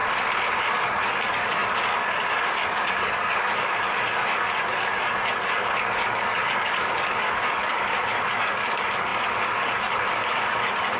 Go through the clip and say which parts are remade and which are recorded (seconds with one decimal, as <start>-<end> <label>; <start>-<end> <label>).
0.0-0.6 recorded; 0.6-11.0 remade